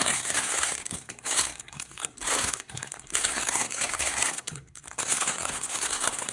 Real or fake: fake